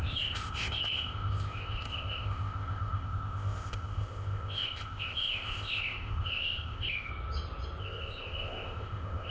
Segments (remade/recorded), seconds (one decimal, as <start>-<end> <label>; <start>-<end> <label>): 0.0-7.1 remade; 7.1-7.8 recorded; 7.8-9.3 remade